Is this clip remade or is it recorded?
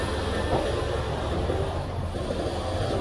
recorded